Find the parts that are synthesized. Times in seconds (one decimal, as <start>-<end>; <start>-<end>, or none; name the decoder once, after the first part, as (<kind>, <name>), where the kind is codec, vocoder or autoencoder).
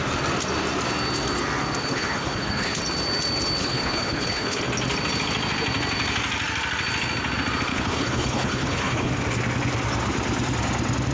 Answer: 1.8-2.8 (codec, HILCodec); 3.6-4.6; 7.7-9.1